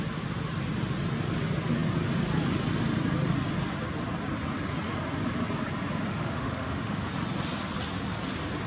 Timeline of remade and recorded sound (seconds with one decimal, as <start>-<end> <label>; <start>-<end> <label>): 0.0-6.1 recorded; 6.1-7.1 remade; 7.1-8.7 recorded